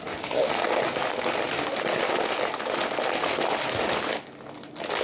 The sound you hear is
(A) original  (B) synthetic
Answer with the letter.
A